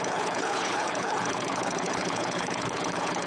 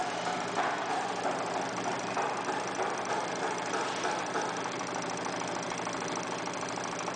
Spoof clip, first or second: first